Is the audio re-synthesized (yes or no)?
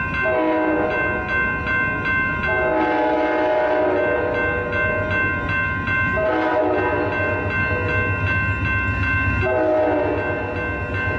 no